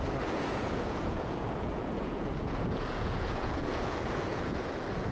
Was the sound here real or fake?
fake